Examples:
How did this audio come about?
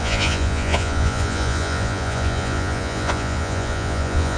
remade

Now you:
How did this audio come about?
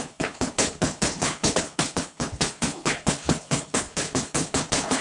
remade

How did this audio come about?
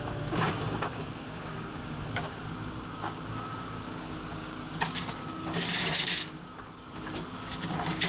remade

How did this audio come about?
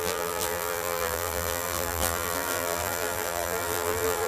remade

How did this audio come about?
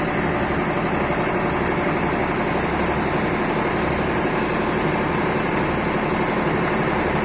recorded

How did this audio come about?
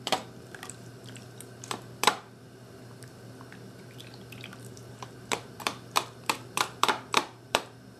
remade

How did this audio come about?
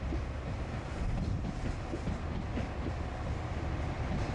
recorded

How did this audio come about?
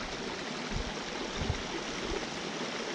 recorded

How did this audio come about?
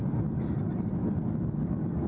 recorded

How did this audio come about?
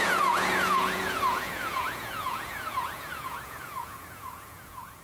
remade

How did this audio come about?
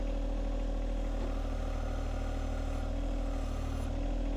recorded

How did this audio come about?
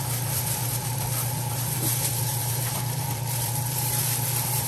remade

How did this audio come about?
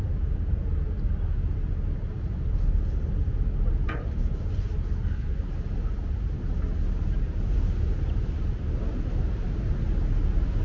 recorded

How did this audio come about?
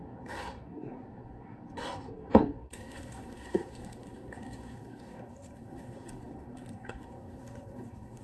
remade